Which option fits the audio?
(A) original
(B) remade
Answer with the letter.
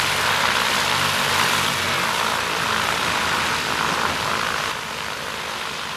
A